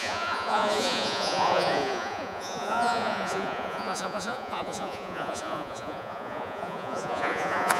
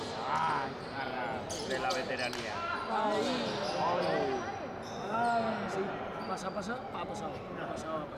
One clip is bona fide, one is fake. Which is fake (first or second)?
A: first